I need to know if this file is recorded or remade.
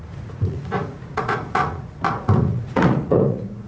remade